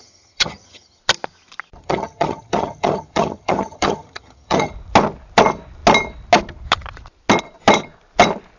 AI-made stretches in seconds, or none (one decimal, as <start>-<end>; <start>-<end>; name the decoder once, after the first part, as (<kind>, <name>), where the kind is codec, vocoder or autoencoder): 0.0-1.0 (vocoder, HiFi-GAN); 1.8-4.7